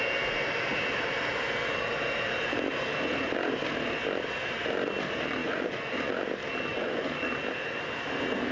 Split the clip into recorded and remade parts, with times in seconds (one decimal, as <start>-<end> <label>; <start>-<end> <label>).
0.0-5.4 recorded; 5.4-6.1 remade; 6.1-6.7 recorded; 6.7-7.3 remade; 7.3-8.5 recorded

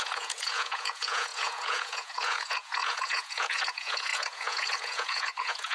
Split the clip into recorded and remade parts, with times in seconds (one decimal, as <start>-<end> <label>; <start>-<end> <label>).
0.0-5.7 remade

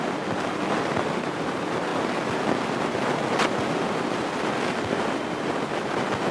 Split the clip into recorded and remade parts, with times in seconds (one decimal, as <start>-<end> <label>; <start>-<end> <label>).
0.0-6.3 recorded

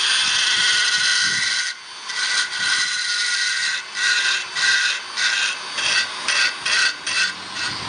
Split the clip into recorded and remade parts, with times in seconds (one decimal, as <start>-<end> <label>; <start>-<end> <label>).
0.0-7.9 recorded

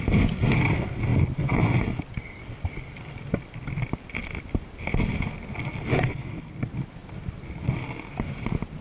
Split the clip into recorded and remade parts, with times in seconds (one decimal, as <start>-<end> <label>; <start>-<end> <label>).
0.0-8.8 recorded